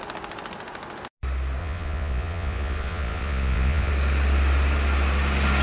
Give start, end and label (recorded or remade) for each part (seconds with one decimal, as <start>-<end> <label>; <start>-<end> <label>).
0.0-1.6 recorded; 1.6-3.9 remade; 3.9-5.6 recorded